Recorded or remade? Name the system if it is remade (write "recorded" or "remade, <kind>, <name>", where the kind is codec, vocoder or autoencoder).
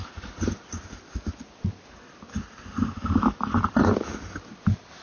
recorded